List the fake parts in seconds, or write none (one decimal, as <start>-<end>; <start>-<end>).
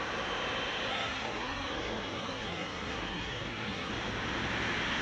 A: 0.9-3.9